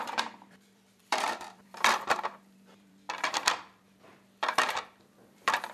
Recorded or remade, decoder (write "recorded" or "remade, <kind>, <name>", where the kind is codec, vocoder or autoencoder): remade, vocoder, BigVGAN v2